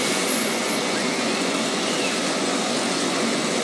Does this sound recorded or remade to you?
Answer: remade